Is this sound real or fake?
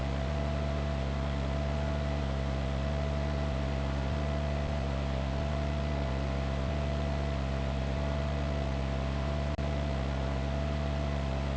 real